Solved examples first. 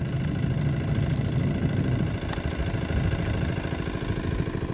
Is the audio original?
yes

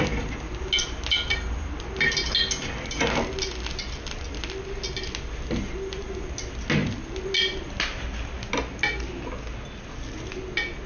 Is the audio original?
yes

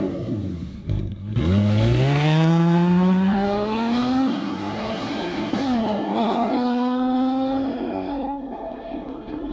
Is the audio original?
no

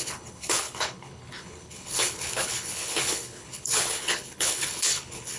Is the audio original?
no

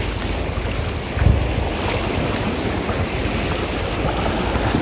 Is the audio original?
yes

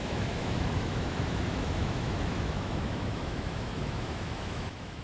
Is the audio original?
no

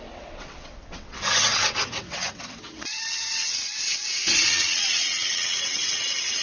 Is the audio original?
no